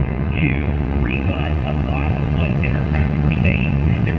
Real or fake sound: fake